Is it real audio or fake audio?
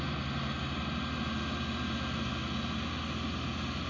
real